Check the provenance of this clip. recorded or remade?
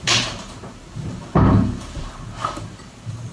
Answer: remade